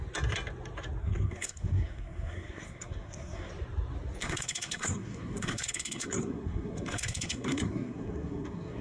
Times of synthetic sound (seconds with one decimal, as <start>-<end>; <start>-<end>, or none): 1.0-3.5; 4.2-8.8

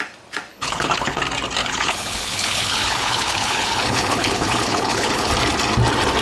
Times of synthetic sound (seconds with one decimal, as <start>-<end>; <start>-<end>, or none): 0.5-1.2; 1.6-5.3

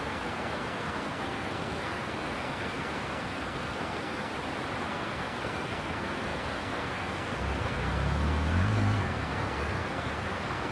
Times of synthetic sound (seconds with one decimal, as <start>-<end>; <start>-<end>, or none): 0.0-4.3; 4.8-10.7

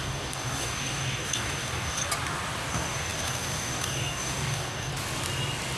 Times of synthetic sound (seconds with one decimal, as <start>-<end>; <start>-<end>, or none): 0.0-2.0; 2.7-4.9